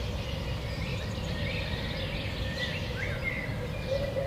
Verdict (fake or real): real